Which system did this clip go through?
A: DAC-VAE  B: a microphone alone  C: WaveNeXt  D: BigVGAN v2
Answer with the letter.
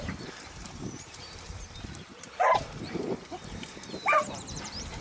D